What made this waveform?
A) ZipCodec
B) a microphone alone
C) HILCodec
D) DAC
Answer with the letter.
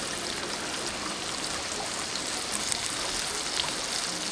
B